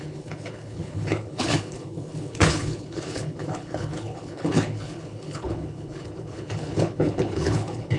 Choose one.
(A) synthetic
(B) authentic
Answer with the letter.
A